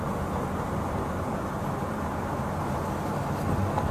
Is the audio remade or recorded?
recorded